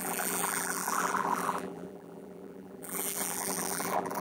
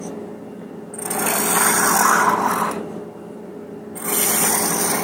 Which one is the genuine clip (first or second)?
second